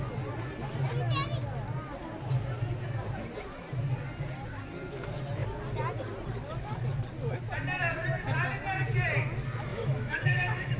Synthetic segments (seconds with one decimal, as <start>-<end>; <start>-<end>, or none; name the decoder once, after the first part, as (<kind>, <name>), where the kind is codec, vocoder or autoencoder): 9.7-10.8 (autoencoder, DAC-VAE)